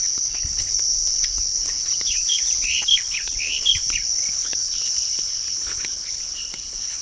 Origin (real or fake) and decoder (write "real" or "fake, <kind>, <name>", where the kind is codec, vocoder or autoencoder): fake, codec, HILCodec